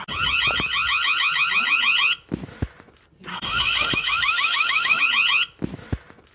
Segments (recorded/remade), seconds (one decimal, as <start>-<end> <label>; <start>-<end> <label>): 0.0-3.3 recorded; 3.3-5.0 remade; 5.0-6.3 recorded